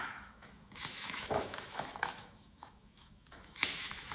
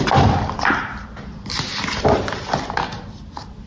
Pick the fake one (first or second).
first